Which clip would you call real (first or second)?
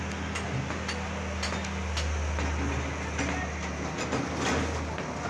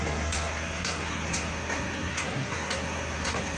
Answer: first